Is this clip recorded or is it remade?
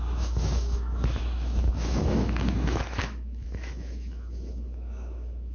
remade